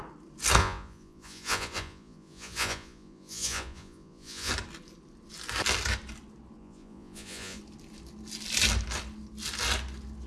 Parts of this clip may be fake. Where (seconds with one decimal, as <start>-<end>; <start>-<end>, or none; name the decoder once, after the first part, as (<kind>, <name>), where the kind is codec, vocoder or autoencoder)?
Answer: 0.6-4.5 (vocoder, Vocos); 6.6-7.6